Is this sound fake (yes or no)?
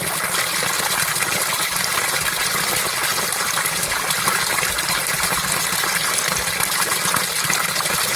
no